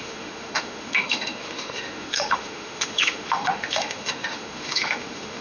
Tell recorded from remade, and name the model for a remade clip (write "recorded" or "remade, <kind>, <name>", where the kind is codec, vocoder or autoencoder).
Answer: remade, autoencoder, DAC-VAE